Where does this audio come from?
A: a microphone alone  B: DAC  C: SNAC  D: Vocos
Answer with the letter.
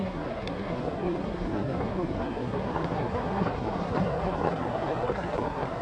C